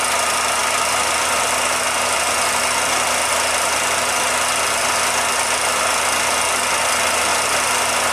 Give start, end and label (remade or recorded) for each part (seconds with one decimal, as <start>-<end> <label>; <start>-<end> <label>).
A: 0.0-7.3 recorded; 7.3-8.1 remade